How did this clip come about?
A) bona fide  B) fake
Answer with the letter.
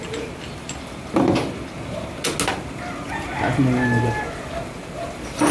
A